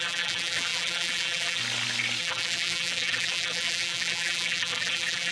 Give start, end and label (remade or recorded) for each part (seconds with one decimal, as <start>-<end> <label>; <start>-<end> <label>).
0.0-1.6 remade; 1.6-2.2 recorded; 2.2-5.3 remade

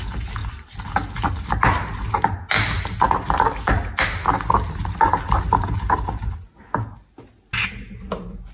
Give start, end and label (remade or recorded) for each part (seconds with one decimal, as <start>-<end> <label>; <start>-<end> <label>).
0.0-0.4 recorded; 0.4-1.3 remade; 1.3-8.5 recorded

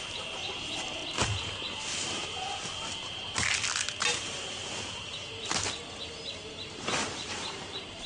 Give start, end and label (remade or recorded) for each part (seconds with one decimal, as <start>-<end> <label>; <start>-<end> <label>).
0.0-1.0 remade; 1.0-4.0 recorded; 4.0-4.6 remade; 4.6-7.4 recorded; 7.4-8.1 remade